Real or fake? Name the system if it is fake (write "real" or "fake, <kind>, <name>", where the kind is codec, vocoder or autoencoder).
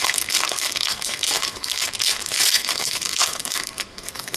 fake, codec, SNAC